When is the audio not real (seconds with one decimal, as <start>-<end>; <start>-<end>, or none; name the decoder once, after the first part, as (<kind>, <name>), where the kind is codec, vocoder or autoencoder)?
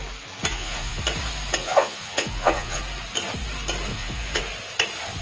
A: 0.5-1.0 (vocoder, Vocos); 1.6-2.8; 3.9-4.4